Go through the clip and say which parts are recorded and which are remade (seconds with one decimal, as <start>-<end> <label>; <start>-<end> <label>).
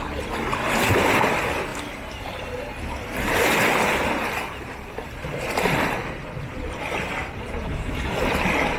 0.0-7.2 recorded; 7.2-8.4 remade; 8.4-8.8 recorded